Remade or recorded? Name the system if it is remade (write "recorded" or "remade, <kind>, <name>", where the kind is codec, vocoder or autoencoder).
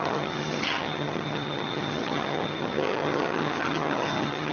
remade, vocoder, HiFi-GAN